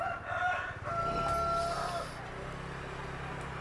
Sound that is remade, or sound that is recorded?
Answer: recorded